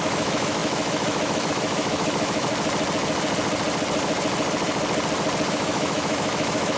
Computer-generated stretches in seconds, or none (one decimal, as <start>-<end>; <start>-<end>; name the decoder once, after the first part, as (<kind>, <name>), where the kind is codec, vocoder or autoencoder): 0.0-2.5 (autoencoder, DAC-VAE); 5.5-6.8